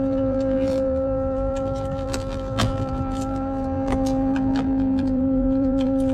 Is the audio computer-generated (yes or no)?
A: yes